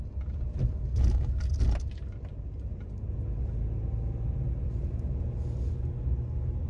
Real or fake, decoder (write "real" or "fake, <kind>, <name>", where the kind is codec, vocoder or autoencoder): real